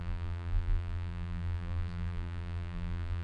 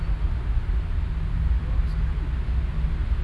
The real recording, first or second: second